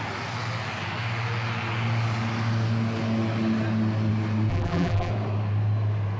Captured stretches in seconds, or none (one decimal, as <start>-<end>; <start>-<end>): 0.0-4.5; 5.1-6.2